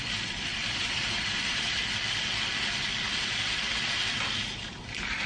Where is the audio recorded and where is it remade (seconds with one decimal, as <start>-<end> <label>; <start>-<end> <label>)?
0.0-1.8 remade; 1.8-4.1 recorded; 4.1-5.3 remade